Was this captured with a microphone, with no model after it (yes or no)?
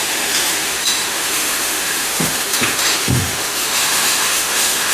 no